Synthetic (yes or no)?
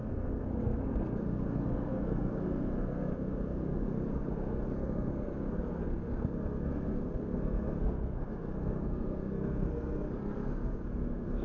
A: yes